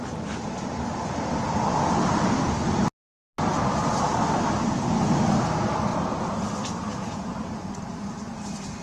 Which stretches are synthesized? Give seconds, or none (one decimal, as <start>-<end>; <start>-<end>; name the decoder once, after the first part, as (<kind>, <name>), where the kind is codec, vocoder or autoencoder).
5.9-6.5 (vocoder, Vocos); 6.9-7.4